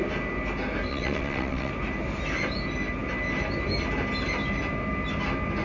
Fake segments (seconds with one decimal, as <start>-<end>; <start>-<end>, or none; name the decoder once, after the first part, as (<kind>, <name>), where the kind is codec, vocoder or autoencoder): 0.9-1.7 (vocoder, WaveNeXt)